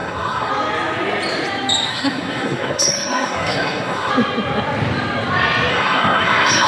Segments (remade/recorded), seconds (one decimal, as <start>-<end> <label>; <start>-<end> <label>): 0.0-0.5 remade; 0.5-1.9 recorded; 1.9-4.1 remade; 4.1-5.7 recorded; 5.7-6.7 remade